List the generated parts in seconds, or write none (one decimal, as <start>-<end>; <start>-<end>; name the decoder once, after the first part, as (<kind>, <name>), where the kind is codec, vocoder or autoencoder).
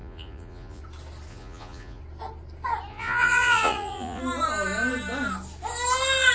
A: 0.0-0.8 (vocoder, Vocos); 1.3-2.0; 2.9-4.2